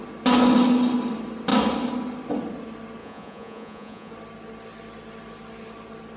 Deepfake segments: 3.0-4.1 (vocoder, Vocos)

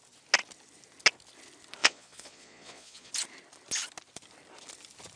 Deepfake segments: 1.8-3.1 (vocoder, Vocos)

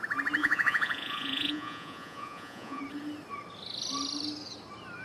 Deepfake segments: 0.4-2.8 (vocoder, Vocos)

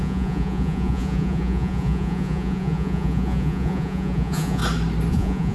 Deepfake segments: 0.0-4.6 (vocoder, Vocos); 5.1-5.5

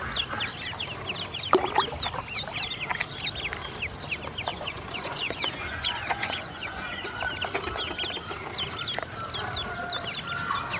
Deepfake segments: 4.5-7.2 (vocoder, Vocos)